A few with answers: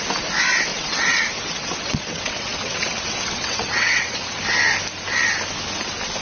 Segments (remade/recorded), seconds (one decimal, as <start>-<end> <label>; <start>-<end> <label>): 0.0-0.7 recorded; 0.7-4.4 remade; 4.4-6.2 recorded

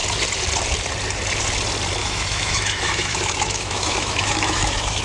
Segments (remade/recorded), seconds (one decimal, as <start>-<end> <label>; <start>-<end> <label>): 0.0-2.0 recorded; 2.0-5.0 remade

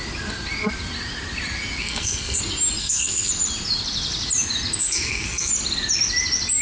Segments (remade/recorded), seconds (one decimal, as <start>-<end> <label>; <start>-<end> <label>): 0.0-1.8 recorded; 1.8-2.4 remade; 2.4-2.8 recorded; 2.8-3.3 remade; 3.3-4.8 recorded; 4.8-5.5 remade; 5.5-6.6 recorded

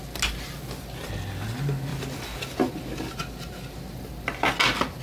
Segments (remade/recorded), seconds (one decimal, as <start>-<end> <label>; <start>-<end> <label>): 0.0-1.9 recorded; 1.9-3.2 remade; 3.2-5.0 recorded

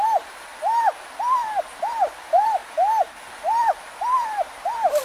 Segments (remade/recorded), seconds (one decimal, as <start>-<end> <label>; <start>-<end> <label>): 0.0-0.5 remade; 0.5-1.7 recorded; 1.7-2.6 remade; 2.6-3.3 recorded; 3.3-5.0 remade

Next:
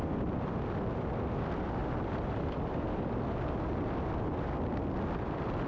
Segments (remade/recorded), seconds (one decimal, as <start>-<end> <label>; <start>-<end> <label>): 0.0-1.8 recorded; 1.8-3.2 remade; 3.2-5.7 recorded